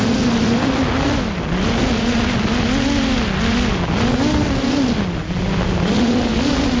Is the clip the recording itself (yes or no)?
yes